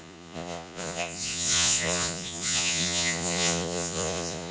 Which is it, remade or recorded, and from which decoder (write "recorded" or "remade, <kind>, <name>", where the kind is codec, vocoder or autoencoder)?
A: remade, vocoder, Vocos